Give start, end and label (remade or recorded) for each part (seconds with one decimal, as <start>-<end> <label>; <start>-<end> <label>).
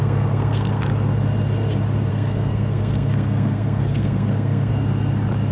0.0-0.9 remade; 0.9-2.1 recorded; 2.1-4.7 remade; 4.7-5.5 recorded